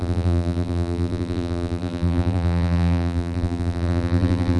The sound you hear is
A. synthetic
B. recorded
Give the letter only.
A